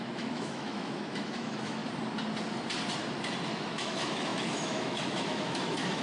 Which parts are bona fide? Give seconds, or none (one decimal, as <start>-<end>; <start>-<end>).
1.8-3.5